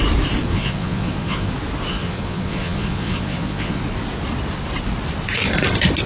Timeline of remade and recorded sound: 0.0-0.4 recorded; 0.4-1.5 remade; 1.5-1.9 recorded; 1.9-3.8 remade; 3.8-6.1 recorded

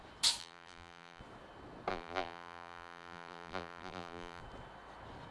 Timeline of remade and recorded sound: 0.0-0.4 recorded; 0.4-1.2 remade; 1.2-1.9 recorded; 1.9-4.4 remade; 4.4-5.3 recorded

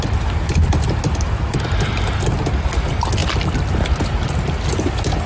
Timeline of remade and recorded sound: 0.0-0.6 recorded; 0.6-1.4 remade; 1.4-3.2 recorded; 3.2-5.3 remade

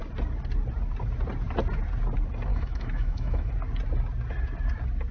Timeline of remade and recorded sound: 0.0-2.5 recorded; 2.5-3.5 remade; 3.5-5.1 recorded

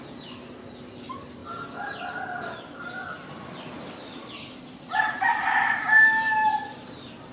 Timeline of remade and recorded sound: 0.0-7.3 recorded

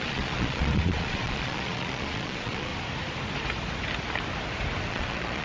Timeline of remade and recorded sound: 0.0-2.7 remade; 2.7-4.9 recorded; 4.9-5.4 remade